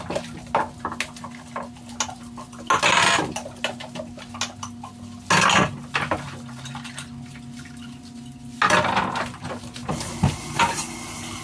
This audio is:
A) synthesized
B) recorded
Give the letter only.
B